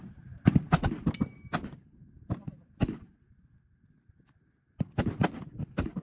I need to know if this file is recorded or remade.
recorded